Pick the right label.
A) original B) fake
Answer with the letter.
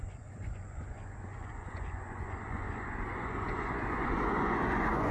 B